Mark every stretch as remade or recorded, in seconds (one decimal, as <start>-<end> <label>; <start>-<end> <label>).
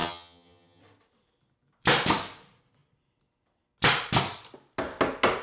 0.0-0.8 remade; 0.8-5.4 recorded